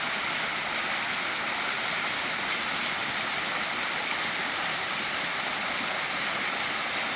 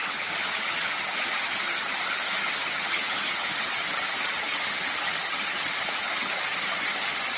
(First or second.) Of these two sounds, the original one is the first